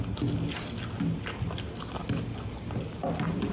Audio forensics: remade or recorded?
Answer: recorded